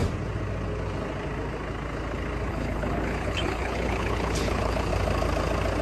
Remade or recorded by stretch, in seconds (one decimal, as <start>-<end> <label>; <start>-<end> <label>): 0.0-2.5 recorded; 2.5-4.9 remade; 4.9-5.8 recorded